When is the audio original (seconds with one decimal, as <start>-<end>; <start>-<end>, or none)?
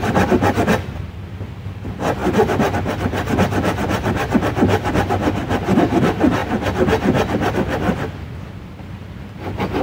0.0-9.8